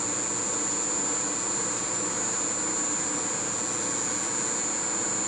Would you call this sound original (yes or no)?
yes